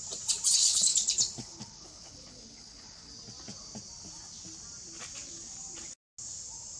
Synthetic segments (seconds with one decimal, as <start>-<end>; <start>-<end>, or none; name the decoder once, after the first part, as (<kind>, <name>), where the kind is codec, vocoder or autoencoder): 0.6-3.1 (codec, HILCodec)